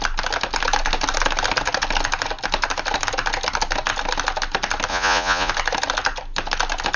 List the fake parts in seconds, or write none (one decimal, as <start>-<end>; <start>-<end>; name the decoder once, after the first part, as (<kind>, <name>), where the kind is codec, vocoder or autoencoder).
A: 4.9-5.5 (vocoder, Vocos)